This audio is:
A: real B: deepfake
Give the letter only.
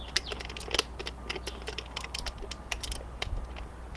A